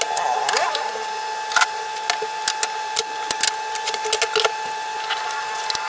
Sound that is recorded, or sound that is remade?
recorded